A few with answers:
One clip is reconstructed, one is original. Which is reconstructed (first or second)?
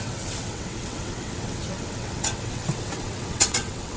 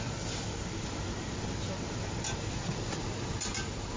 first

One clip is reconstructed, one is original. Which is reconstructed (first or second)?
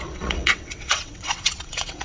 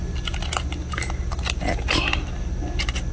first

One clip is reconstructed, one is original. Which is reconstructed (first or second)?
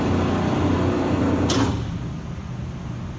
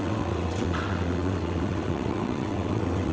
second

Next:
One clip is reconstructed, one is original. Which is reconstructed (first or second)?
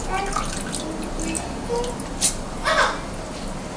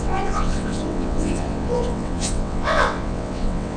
second